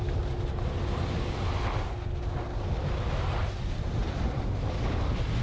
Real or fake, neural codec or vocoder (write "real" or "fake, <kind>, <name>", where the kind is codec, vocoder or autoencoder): real